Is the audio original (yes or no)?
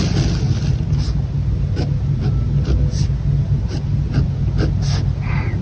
yes